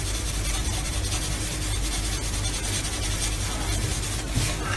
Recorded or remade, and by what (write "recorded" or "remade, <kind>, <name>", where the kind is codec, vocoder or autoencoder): recorded